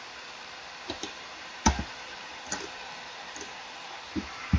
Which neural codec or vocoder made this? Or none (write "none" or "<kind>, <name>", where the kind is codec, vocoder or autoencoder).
vocoder, BigVGAN v2